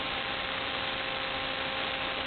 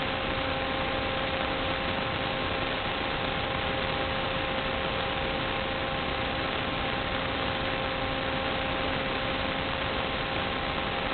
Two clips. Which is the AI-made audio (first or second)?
second